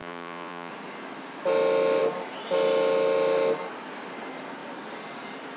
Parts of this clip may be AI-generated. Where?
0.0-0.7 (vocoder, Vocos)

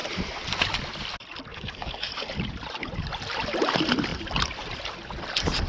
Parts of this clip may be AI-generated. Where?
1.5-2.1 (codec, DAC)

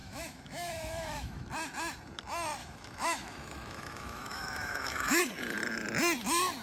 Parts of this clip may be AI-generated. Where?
0.0-1.5 (autoencoder, DAC-VAE); 2.6-5.2

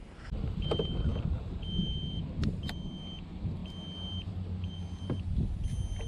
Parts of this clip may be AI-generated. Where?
none

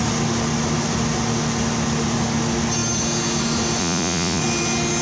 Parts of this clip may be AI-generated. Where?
3.8-4.4 (vocoder, Vocos)

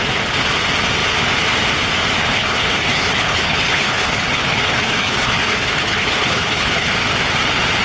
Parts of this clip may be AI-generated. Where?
2.2-6.9 (codec, HILCodec)

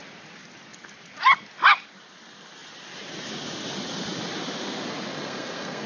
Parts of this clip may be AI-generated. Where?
5.1-5.9 (codec, SNAC)

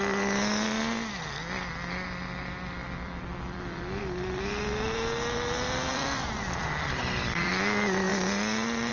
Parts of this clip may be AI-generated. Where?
2.8-4.0 (vocoder, BigVGAN v2); 5.9-7.5